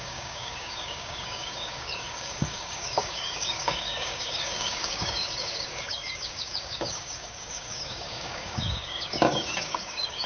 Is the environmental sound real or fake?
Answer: fake